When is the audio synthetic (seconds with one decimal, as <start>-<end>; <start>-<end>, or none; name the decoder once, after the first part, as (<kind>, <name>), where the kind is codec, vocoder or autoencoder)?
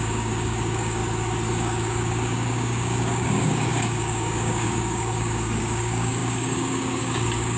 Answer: 0.0-1.0 (codec, DAC); 1.5-7.6